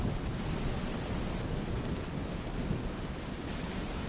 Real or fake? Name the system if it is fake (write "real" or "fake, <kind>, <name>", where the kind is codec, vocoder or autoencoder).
real